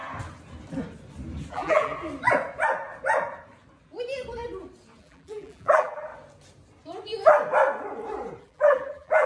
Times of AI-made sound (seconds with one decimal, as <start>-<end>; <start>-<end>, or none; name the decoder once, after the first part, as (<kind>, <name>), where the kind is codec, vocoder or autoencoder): 1.5-1.9 (vocoder, BigVGAN v2); 5.0-6.1; 8.4-9.3